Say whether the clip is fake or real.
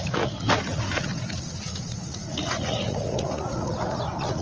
fake